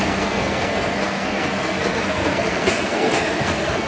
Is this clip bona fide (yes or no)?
no